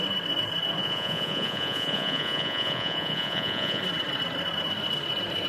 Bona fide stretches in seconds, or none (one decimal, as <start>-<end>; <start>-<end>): 0.0-0.8; 3.8-5.5